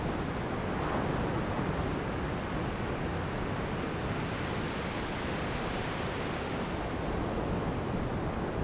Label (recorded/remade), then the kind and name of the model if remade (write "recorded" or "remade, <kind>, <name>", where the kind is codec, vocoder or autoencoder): recorded